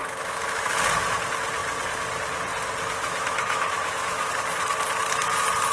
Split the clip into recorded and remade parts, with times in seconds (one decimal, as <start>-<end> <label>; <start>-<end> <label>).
0.0-0.8 remade; 0.8-3.0 recorded; 3.0-4.3 remade; 4.3-5.7 recorded